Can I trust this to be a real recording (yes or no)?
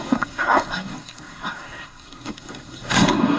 no